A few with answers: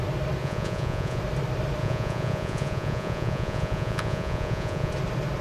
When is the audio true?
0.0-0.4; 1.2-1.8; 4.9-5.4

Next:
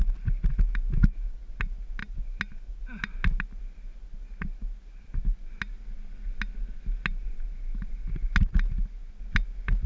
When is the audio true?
0.0-9.9

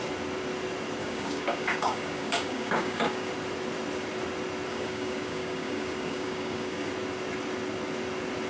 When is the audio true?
0.0-1.0; 3.3-4.7; 6.9-8.5

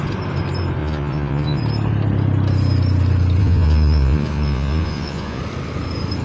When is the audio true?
0.0-0.8; 1.6-3.4; 5.4-6.2

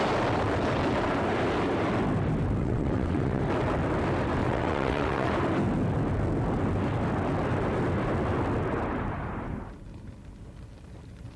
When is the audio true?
0.0-2.6; 3.4-4.4; 5.3-11.4

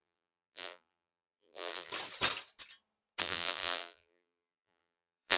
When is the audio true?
1.9-3.2